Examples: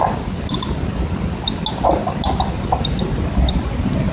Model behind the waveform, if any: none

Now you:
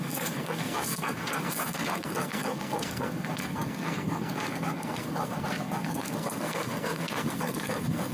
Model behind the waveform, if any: codec, SNAC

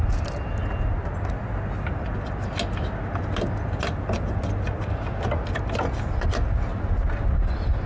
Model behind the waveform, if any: none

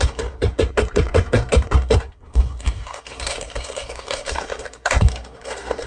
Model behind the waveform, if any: codec, SNAC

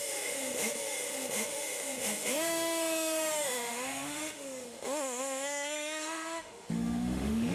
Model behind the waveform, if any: autoencoder, DAC-VAE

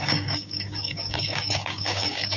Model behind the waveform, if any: codec, DAC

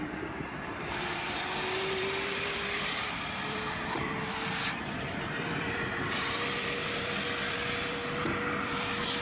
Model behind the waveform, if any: vocoder, BigVGAN v2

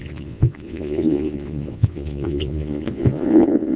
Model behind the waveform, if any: vocoder, Vocos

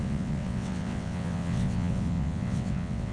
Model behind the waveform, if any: vocoder, WaveNeXt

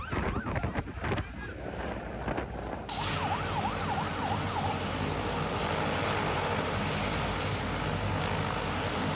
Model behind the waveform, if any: none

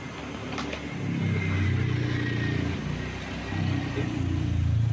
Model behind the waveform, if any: none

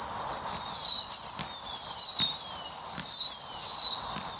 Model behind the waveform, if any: vocoder, BigVGAN v2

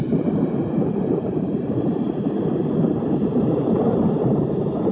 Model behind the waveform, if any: none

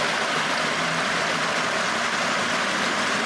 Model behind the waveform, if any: vocoder, BigVGAN v2